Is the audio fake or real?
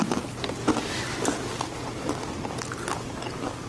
real